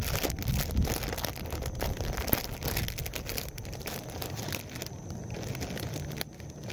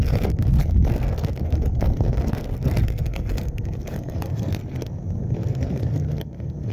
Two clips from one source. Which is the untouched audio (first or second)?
first